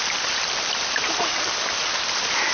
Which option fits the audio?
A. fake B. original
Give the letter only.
B